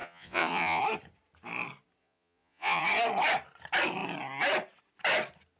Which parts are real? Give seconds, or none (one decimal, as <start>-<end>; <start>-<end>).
0.8-2.0; 2.8-5.6